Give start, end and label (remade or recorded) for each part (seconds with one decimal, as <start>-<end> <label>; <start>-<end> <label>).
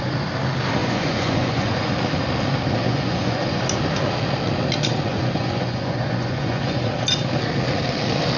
0.0-0.8 recorded; 0.8-1.9 remade; 1.9-2.8 recorded; 2.8-3.6 remade; 3.6-5.1 recorded; 5.1-6.9 remade; 6.9-8.4 recorded